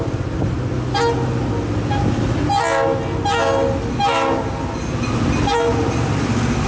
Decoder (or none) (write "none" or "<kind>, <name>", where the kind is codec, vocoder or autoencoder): none